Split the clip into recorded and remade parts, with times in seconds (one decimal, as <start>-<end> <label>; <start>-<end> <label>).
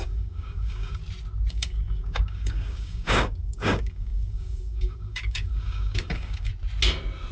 0.0-1.0 remade; 1.0-1.5 recorded; 1.5-6.5 remade; 6.5-7.3 recorded